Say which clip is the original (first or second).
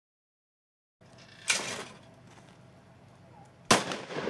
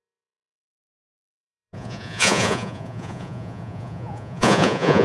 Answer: first